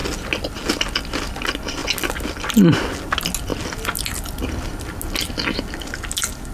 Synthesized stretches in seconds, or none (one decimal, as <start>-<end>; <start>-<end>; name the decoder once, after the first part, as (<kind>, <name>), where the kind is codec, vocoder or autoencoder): none